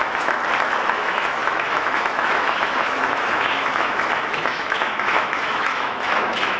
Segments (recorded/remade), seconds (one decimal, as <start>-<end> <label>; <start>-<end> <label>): 0.0-0.4 remade; 0.4-0.9 recorded; 0.9-6.6 remade